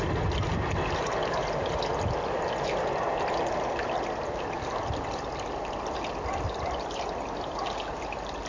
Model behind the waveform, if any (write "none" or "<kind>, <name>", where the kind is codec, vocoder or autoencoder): none